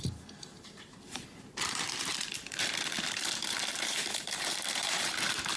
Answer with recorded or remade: remade